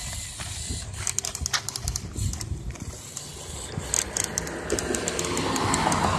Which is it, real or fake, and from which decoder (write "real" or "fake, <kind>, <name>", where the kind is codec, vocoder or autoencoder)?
real